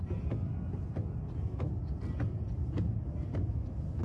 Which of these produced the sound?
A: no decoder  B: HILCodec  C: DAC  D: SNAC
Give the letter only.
A